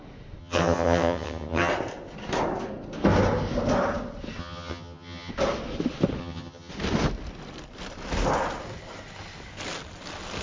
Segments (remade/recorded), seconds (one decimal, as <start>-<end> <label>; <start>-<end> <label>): 0.0-0.4 recorded; 0.4-1.7 remade; 1.7-4.4 recorded; 4.4-5.3 remade; 5.3-6.2 recorded; 6.2-6.7 remade; 6.7-10.4 recorded